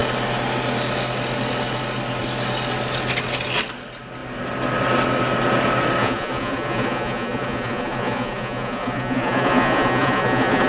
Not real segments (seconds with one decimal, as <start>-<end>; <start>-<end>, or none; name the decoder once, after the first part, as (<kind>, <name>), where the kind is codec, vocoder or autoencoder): 6.0-10.7 (vocoder, Vocos)